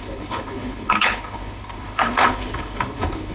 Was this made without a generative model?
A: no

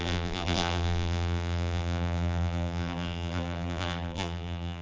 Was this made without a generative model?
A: no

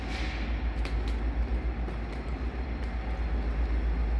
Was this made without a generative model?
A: yes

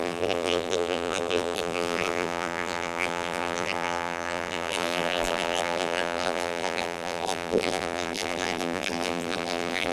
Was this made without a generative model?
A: no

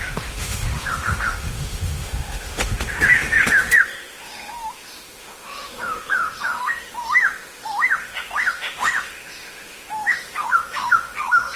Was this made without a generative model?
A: no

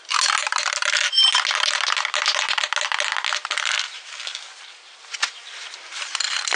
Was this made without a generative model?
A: yes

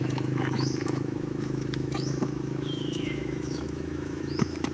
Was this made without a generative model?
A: no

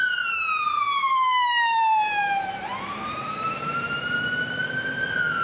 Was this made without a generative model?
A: no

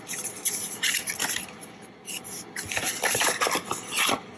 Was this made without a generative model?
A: yes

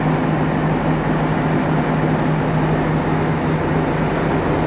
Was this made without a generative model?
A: yes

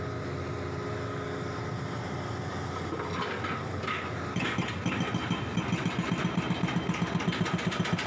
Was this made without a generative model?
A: yes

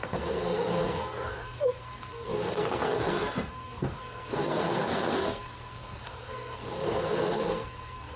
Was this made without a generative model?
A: no